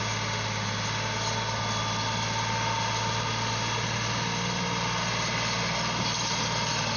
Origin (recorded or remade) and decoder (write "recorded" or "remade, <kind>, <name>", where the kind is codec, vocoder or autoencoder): recorded